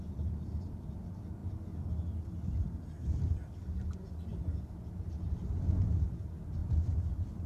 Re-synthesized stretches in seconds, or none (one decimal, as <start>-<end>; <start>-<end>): none